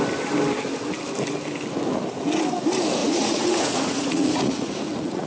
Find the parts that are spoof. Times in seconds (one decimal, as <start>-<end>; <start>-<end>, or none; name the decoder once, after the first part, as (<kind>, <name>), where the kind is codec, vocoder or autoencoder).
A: 3.0-5.3 (vocoder, Vocos)